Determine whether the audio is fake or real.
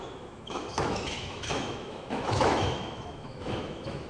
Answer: fake